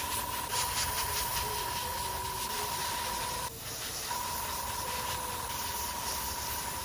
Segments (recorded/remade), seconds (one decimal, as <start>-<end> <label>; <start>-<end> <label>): 0.0-6.8 remade